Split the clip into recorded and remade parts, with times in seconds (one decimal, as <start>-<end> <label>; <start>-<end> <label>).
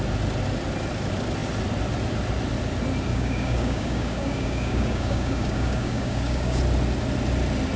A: 0.0-3.1 recorded; 3.1-6.6 remade; 6.6-7.8 recorded